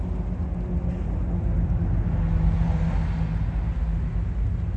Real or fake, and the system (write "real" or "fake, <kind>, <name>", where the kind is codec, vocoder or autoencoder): real